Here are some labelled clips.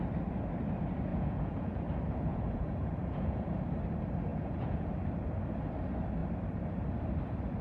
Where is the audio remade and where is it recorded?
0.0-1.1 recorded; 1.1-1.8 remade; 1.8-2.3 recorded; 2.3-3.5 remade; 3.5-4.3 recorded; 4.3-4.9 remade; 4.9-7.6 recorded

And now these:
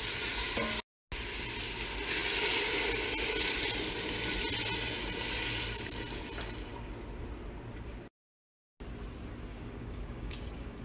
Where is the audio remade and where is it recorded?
0.0-9.5 recorded; 9.5-10.8 remade

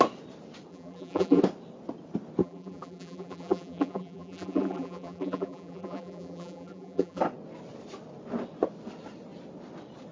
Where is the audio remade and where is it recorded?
0.0-0.7 recorded; 0.7-1.4 remade; 1.4-2.4 recorded; 2.4-7.2 remade; 7.2-10.1 recorded

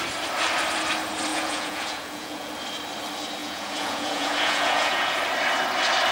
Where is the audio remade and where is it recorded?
0.0-1.3 recorded; 1.3-2.5 remade; 2.5-3.4 recorded; 3.4-5.2 remade; 5.2-6.1 recorded

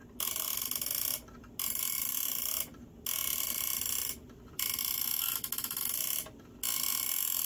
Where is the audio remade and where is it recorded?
0.0-7.5 recorded